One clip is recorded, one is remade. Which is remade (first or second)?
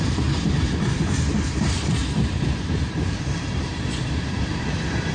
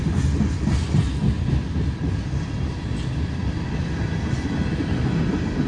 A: first